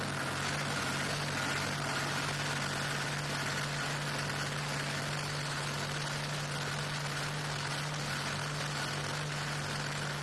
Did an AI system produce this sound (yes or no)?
no